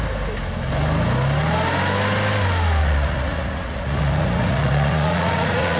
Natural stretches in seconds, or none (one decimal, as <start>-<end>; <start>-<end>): 0.0-2.8